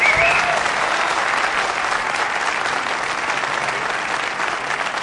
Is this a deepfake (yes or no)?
no